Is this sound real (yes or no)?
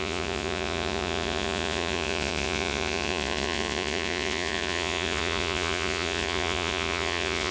no